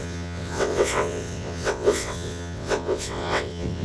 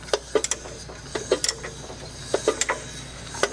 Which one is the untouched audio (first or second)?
second